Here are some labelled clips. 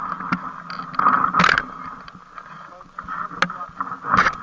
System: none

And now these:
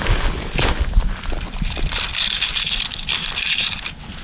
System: none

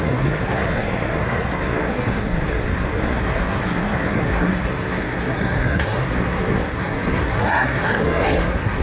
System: codec, SNAC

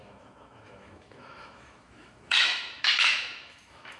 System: autoencoder, DAC-VAE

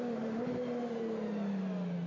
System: none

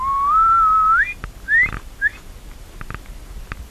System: none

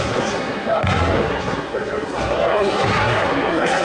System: codec, SNAC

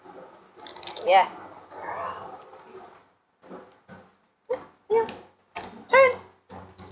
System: none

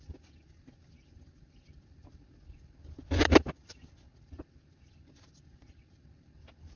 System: vocoder, BigVGAN v2